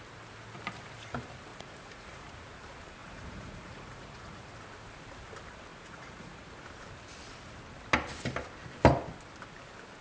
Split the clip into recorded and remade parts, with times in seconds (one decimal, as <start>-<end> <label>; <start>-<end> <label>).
0.0-1.5 recorded; 1.5-2.3 remade; 2.3-3.0 recorded; 3.0-4.5 remade; 4.5-5.7 recorded; 5.7-6.6 remade; 6.6-10.0 recorded